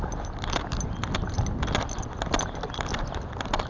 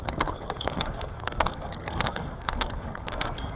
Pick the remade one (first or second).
second